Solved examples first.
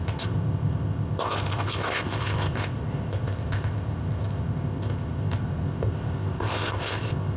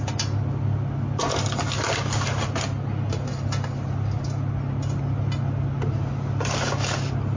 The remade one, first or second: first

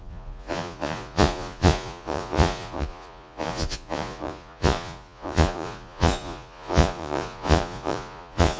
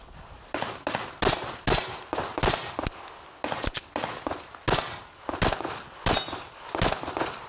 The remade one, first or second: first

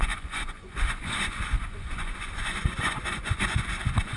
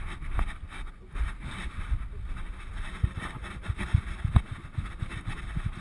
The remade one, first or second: first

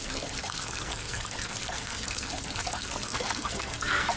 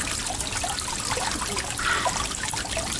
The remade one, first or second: first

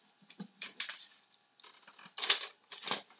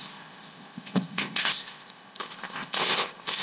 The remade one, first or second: second